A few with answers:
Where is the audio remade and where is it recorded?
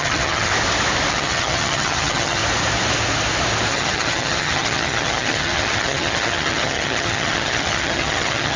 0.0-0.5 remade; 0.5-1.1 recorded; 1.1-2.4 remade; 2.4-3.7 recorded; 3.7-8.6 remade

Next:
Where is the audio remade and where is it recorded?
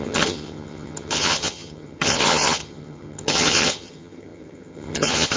0.0-5.4 remade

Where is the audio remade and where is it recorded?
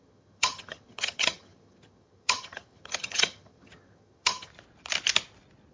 0.0-4.5 remade; 4.5-5.7 recorded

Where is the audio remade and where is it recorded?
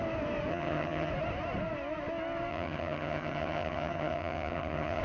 0.0-0.5 recorded; 0.5-1.1 remade; 1.1-2.5 recorded; 2.5-5.0 remade